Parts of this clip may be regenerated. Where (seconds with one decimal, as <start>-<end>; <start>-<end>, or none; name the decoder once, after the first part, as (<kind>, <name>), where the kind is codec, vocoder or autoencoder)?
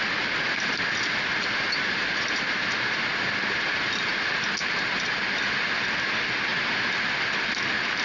none